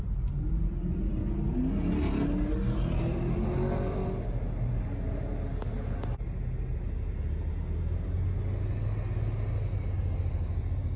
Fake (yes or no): no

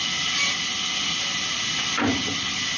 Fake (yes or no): no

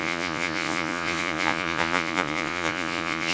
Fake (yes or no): yes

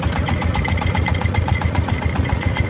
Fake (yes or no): yes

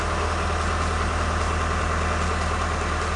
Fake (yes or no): no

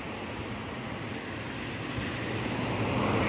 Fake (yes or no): no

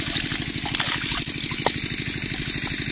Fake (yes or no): no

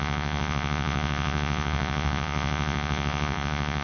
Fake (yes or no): yes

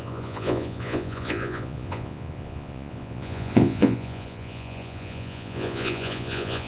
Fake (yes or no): yes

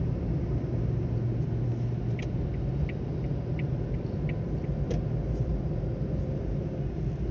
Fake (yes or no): no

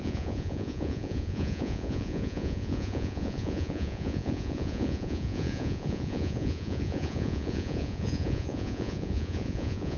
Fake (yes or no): yes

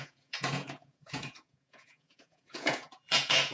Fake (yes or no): yes